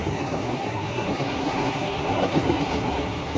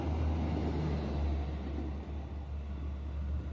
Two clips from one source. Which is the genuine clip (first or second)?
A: second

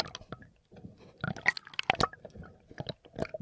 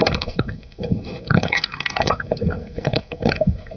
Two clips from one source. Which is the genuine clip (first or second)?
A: first